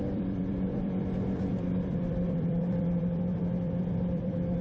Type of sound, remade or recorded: remade